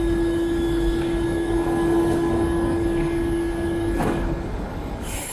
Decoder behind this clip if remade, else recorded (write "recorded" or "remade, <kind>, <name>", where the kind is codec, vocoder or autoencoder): remade, codec, DAC